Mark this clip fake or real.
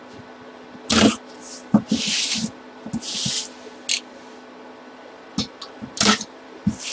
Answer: real